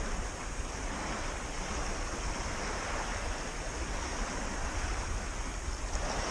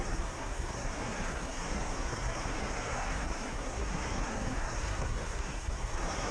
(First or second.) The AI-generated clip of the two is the second